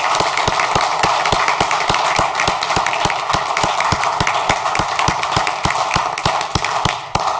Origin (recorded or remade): recorded